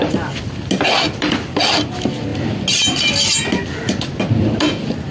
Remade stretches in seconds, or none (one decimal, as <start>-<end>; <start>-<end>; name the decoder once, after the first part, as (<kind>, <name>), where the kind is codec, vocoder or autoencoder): none